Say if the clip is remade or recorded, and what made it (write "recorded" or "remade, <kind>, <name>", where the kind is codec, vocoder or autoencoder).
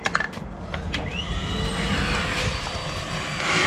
recorded